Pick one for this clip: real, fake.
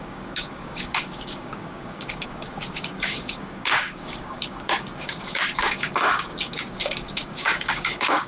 fake